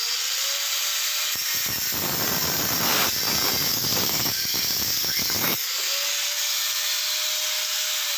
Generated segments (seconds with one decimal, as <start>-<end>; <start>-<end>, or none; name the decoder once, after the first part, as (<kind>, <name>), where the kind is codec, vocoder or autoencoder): 3.7-6.1 (codec, DAC)